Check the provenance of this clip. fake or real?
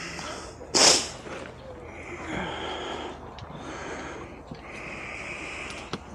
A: real